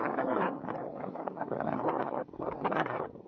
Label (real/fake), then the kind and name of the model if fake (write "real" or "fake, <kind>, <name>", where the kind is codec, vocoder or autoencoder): fake, codec, SNAC